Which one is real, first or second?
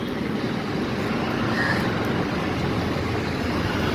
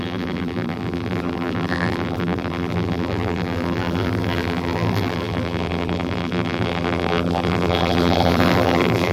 first